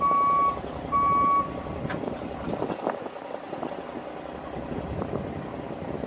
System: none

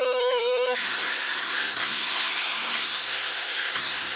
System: codec, SNAC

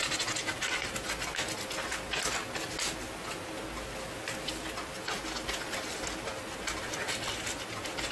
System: none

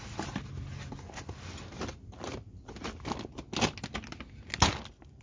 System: none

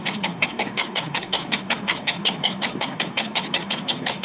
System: codec, SNAC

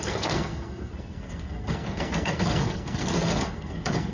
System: codec, SNAC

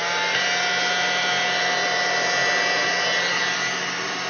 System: none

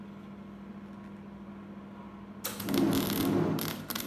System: none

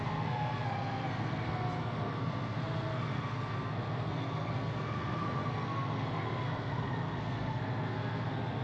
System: codec, SNAC